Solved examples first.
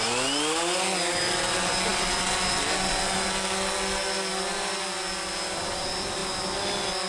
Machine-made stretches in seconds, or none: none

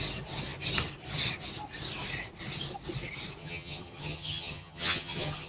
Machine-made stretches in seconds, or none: 3.4-5.5 (vocoder, HiFi-GAN)

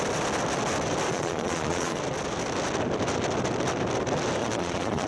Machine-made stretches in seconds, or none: 1.1-2.0 (vocoder, Vocos); 4.4-5.1

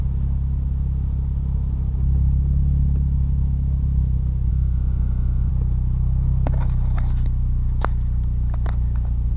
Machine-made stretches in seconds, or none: 4.5-5.5 (autoencoder, DAC-VAE)

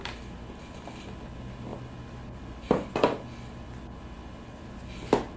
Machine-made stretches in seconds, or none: none

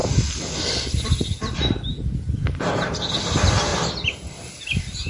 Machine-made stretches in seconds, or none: 0.0-3.1 (vocoder, BigVGAN v2); 3.7-4.4